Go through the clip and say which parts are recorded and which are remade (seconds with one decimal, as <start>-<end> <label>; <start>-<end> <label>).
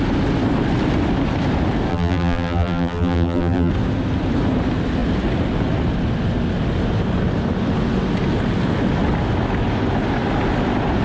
0.0-1.9 recorded; 1.9-3.7 remade; 3.7-11.0 recorded